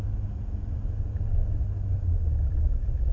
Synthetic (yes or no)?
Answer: no